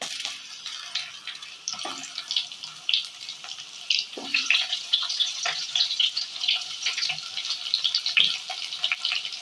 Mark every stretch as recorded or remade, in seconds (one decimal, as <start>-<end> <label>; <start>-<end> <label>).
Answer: 0.0-4.1 recorded; 4.1-7.1 remade; 7.1-9.4 recorded

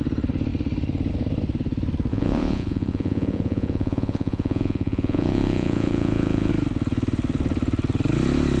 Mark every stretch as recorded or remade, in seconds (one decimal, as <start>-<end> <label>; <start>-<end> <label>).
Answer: 0.0-2.1 recorded; 2.1-6.5 remade; 6.5-8.6 recorded

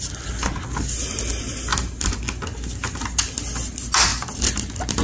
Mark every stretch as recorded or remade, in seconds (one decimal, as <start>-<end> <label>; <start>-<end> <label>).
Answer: 0.0-5.0 recorded

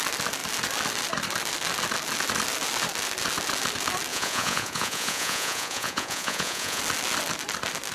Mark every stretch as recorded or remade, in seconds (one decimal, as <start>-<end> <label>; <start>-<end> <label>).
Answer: 0.0-4.1 recorded; 4.1-6.8 remade; 6.8-7.9 recorded

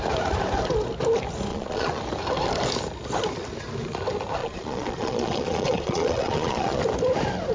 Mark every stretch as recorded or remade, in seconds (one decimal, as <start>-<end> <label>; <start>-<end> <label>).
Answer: 0.0-1.5 recorded; 1.5-2.0 remade; 2.0-4.4 recorded; 4.4-6.8 remade; 6.8-7.5 recorded

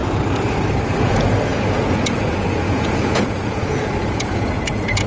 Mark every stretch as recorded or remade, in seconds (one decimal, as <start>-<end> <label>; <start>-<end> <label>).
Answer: 0.0-1.0 recorded; 1.0-5.1 remade

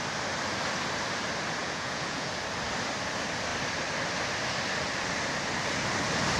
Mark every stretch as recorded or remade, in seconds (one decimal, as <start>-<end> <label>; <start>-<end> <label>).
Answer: 0.0-1.6 recorded; 1.6-2.3 remade; 2.3-6.4 recorded

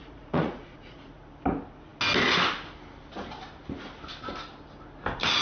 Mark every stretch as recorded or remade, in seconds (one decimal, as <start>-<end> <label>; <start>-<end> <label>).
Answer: 0.0-1.1 remade; 1.1-5.4 recorded